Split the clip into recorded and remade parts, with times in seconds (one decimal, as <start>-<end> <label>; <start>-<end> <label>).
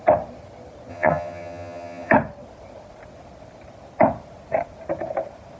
0.0-0.9 recorded; 0.9-2.1 remade; 2.1-5.6 recorded